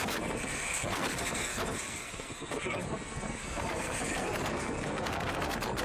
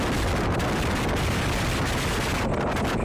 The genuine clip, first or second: second